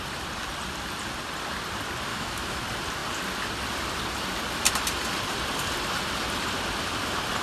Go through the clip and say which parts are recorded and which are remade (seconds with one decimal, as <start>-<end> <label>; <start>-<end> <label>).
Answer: 0.0-2.1 recorded; 2.1-2.6 remade; 2.6-7.4 recorded